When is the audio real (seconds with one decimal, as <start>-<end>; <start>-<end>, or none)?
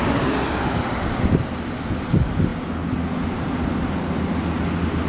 0.0-5.1